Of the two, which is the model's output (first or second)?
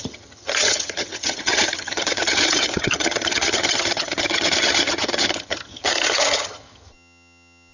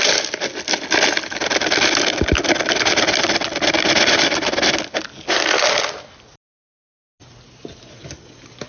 first